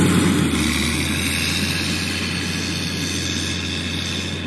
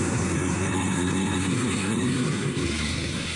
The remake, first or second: second